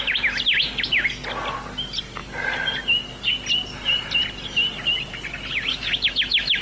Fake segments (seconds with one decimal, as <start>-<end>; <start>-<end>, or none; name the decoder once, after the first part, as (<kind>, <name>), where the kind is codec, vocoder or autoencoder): 5.7-6.6 (autoencoder, DAC-VAE)